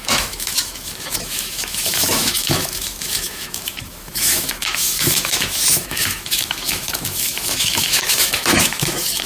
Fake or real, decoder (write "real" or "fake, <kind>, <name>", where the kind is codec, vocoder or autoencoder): fake, autoencoder, DAC-VAE